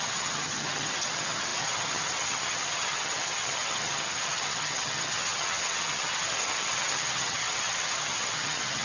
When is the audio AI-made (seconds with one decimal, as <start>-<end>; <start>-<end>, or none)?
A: 0.0-8.8